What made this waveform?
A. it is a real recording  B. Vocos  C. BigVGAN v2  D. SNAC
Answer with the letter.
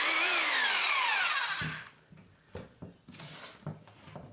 A